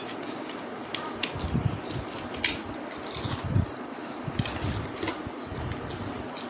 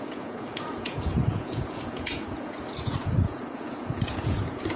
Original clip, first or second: first